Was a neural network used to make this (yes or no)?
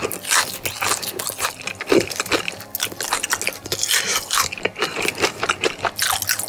no